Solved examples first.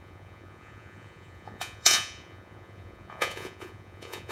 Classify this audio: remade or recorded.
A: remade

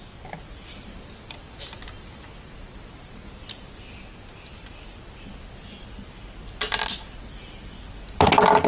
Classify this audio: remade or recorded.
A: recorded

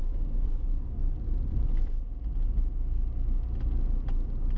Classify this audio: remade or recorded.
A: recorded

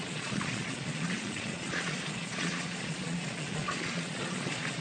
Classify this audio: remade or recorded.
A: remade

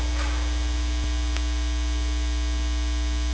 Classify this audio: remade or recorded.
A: recorded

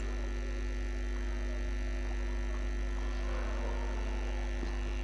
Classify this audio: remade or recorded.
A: recorded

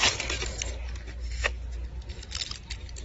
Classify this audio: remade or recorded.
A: recorded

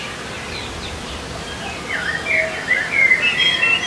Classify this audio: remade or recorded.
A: recorded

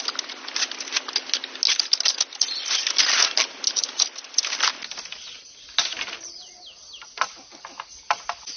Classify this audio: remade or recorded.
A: recorded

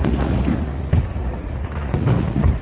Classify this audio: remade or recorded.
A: remade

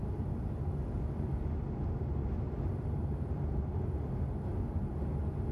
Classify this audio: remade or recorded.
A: recorded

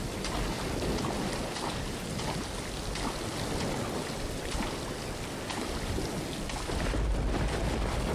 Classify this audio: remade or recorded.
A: recorded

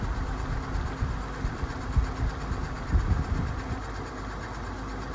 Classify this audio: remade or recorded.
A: recorded